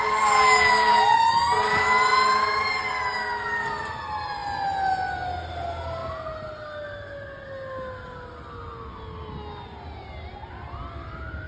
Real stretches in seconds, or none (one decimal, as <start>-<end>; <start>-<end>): 0.0-11.5